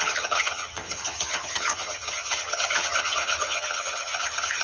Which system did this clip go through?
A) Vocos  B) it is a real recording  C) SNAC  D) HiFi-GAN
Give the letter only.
D